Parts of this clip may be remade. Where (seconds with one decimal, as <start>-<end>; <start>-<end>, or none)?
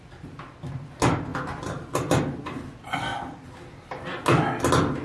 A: 1.3-2.2; 3.1-4.0